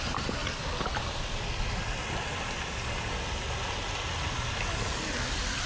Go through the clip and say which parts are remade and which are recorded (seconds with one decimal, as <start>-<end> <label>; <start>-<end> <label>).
0.0-5.7 recorded